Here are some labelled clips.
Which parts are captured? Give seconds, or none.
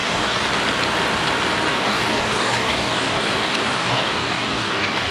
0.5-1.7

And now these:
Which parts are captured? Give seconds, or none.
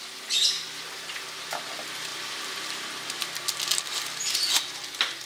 0.0-2.1; 3.2-5.3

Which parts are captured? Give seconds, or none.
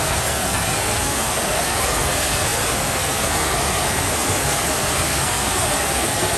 none